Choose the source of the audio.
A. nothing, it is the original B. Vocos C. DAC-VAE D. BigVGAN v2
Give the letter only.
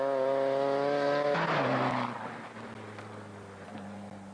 A